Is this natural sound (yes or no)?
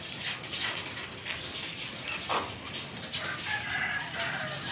yes